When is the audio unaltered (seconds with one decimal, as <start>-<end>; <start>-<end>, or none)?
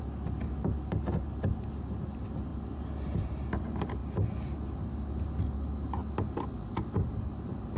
0.0-7.8